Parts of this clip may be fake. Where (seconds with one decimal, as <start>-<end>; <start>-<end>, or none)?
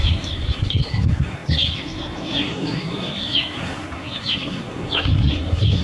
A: 0.0-5.8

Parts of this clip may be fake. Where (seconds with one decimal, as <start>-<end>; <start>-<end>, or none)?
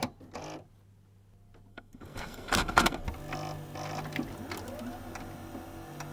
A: 1.7-3.0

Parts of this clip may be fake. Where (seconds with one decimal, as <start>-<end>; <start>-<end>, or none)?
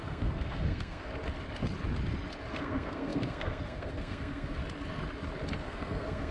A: 0.0-1.1; 2.5-4.6; 5.6-6.3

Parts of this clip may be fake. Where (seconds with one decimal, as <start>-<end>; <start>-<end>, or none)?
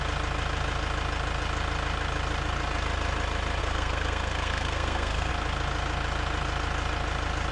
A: 3.6-5.3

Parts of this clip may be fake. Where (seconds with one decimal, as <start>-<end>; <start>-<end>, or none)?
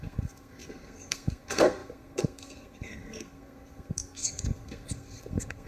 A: 0.0-5.7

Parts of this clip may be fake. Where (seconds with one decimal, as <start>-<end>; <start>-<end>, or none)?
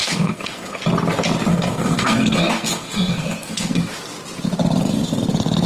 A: 0.0-0.8; 1.5-3.9